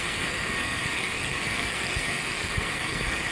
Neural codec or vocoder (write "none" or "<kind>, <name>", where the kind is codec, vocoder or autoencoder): codec, SNAC